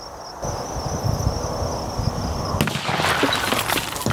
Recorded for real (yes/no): yes